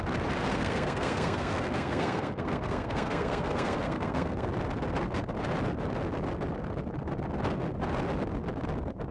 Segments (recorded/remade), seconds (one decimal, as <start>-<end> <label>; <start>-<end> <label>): 0.0-0.5 recorded; 0.5-4.5 remade; 4.5-9.1 recorded